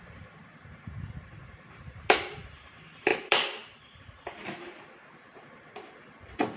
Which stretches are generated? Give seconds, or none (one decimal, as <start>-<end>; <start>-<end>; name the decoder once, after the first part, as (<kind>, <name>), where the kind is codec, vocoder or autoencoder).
0.0-4.4 (vocoder, BigVGAN v2); 5.1-6.6